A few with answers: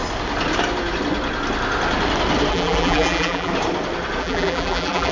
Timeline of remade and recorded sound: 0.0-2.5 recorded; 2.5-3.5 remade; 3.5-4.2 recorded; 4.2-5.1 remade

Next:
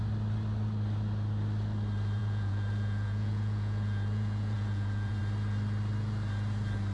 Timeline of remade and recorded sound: 0.0-2.2 recorded; 2.2-5.2 remade; 5.2-6.9 recorded